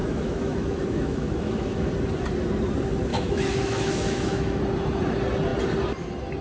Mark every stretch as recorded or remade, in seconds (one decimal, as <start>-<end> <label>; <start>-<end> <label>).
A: 0.0-1.9 remade; 1.9-3.1 recorded; 3.1-4.6 remade; 4.6-6.4 recorded